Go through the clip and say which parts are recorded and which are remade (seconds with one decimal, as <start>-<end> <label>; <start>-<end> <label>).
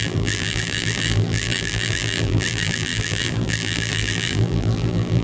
0.0-5.2 remade